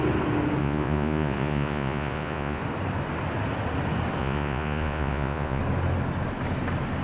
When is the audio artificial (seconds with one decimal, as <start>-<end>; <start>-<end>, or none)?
0.6-2.6; 4.2-5.6

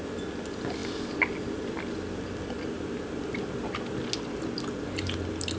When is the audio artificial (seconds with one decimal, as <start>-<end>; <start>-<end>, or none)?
none

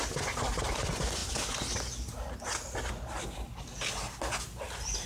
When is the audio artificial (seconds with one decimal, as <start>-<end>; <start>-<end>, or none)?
none

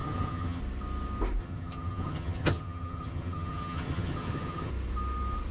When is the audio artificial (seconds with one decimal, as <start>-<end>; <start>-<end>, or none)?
0.0-0.6; 1.4-4.7

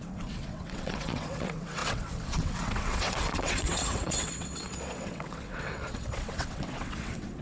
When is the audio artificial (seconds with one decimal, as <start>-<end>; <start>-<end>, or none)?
0.0-7.4

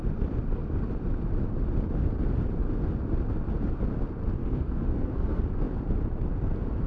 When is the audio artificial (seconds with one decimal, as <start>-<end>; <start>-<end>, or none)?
4.4-5.4